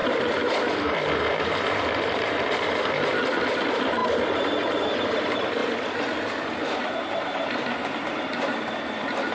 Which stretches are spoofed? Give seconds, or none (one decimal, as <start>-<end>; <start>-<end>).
none